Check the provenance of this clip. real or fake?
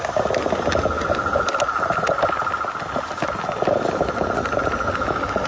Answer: real